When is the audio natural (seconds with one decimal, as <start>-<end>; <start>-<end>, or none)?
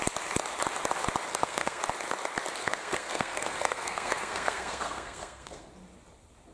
0.0-1.3; 1.8-2.6; 5.7-6.5